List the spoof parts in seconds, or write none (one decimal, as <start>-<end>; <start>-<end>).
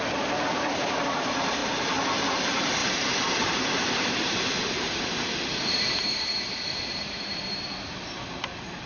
0.0-1.6; 2.3-2.8; 3.4-8.9